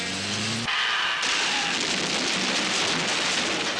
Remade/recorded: recorded